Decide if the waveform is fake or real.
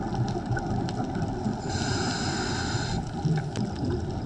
real